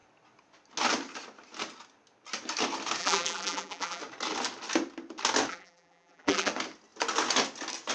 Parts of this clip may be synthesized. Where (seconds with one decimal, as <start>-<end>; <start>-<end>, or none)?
3.0-4.0; 5.5-6.5